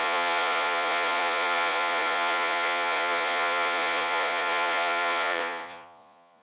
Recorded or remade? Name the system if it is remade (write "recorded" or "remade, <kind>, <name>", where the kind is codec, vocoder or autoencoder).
remade, vocoder, Vocos